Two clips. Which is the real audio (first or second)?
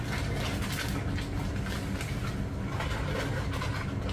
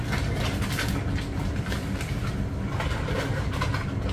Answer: first